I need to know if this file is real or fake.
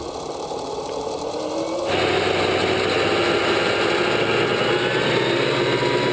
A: real